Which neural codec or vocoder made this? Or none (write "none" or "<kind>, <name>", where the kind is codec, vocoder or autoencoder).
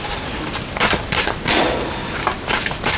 none